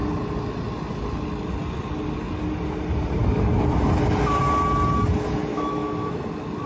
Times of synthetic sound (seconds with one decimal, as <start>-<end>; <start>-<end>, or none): 5.5-6.3